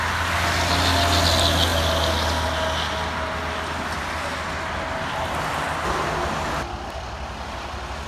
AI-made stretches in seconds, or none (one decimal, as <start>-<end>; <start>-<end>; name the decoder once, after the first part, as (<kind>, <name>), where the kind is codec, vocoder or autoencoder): none